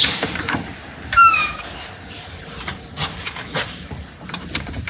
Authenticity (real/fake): fake